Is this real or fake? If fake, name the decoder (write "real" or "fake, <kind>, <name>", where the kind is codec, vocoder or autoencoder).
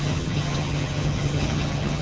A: fake, vocoder, HiFi-GAN